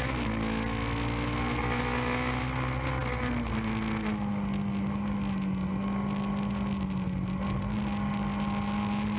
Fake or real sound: real